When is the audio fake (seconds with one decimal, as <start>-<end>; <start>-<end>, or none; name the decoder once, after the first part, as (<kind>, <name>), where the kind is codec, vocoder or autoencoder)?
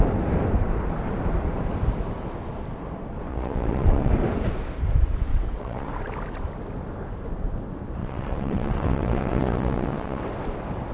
3.3-4.1 (vocoder, WaveNeXt); 5.3-5.9; 8.0-10.2